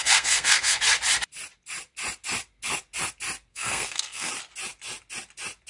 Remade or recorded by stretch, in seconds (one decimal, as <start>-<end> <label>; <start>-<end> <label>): 0.0-0.8 remade; 0.8-3.5 recorded; 3.5-4.3 remade; 4.3-5.7 recorded

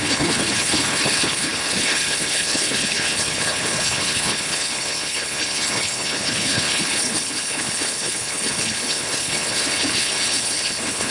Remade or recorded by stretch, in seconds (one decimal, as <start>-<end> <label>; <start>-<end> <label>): 0.0-11.1 remade

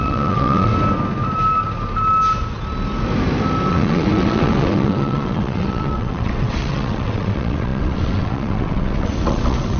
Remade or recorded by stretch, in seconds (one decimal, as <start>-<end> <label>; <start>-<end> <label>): 0.0-0.7 remade; 0.7-3.7 recorded; 3.7-9.8 remade